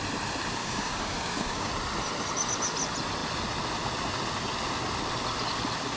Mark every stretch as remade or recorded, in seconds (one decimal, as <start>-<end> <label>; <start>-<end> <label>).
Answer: 0.0-0.6 recorded; 0.6-1.7 remade; 1.7-6.0 recorded